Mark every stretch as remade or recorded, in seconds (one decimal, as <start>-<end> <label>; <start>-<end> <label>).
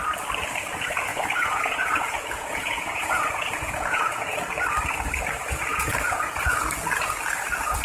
0.0-1.1 recorded; 1.1-4.4 remade; 4.4-5.7 recorded; 5.7-6.6 remade; 6.6-7.8 recorded